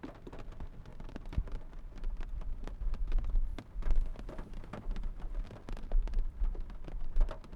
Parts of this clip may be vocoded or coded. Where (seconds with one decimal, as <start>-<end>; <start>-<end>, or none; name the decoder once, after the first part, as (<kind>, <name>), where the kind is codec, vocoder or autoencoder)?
0.9-2.7 (vocoder, BigVGAN v2)